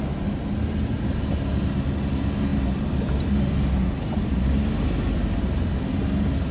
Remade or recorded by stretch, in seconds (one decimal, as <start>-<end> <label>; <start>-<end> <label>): 0.0-6.5 recorded